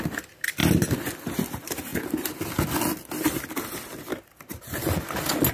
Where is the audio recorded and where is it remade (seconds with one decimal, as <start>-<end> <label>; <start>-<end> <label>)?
0.0-5.5 recorded